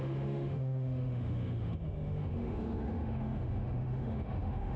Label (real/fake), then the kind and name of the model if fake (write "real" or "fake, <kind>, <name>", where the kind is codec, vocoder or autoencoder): fake, autoencoder, DAC-VAE